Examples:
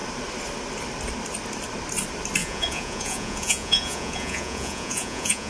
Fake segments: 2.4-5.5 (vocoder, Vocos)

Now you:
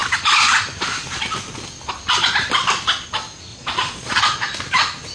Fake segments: 3.5-4.2 (vocoder, Vocos)

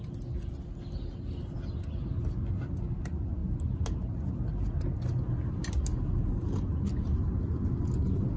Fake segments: none

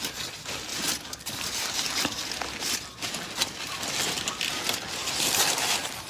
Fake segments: none

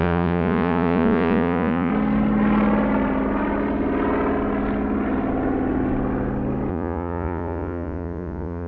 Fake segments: 0.0-1.9 (vocoder, Vocos); 6.7-8.7

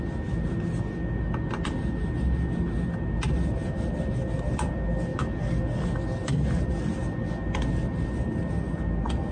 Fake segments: none